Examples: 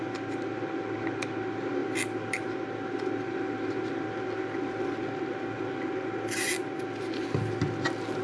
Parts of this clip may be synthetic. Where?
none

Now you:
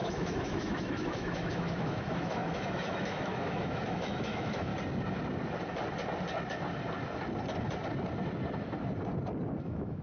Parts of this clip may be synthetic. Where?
0.0-4.7 (autoencoder, DAC-VAE); 9.6-10.0

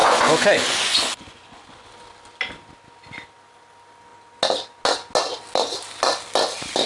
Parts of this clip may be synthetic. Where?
0.0-1.9 (vocoder, Vocos)

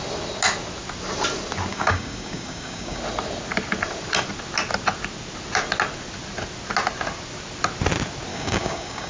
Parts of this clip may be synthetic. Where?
1.7-3.0 (codec, DAC); 8.3-9.1

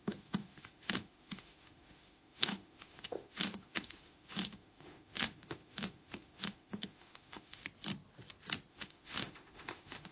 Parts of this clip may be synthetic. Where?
0.0-7.6 (autoencoder, DAC-VAE); 8.7-10.1

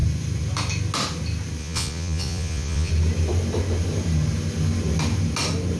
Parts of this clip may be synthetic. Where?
1.6-2.9 (vocoder, Vocos)